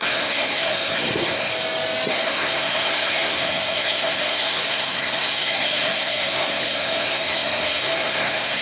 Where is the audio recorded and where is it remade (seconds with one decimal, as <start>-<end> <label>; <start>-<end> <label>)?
0.0-1.5 remade; 1.5-2.1 recorded; 2.1-8.6 remade